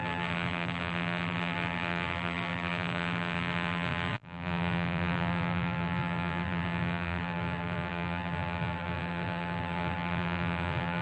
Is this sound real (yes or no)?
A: no